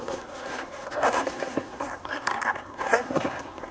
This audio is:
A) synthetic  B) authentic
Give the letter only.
A